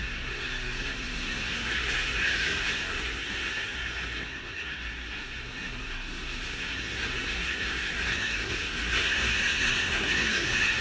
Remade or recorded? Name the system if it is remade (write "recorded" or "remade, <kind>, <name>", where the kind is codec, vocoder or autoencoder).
remade, codec, SNAC